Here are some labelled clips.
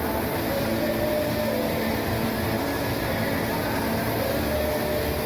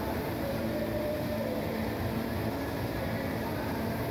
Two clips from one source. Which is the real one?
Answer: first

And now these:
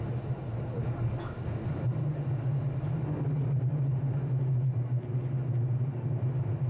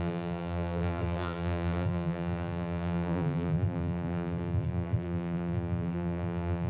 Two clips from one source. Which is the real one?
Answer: first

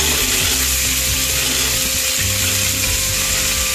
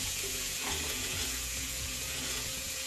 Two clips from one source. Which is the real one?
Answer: first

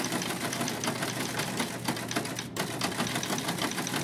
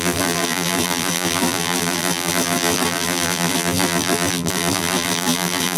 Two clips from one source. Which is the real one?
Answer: first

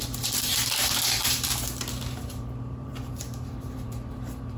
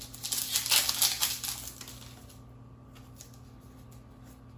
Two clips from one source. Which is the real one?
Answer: second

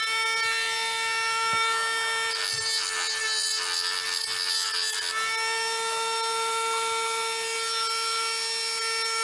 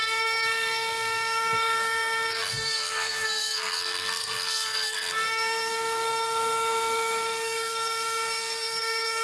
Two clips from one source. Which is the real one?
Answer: first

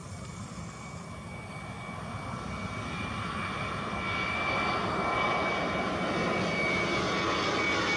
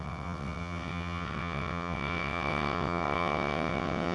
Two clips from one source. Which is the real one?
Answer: first